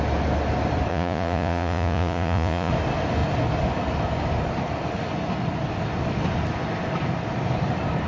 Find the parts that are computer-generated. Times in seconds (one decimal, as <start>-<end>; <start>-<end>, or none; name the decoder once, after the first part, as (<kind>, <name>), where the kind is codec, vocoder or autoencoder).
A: 0.9-2.7 (vocoder, Vocos)